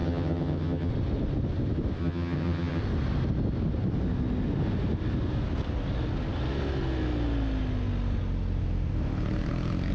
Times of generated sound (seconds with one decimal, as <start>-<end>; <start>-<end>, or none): 0.0-0.9; 2.0-2.8